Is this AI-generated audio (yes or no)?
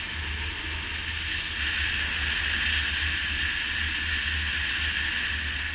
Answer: no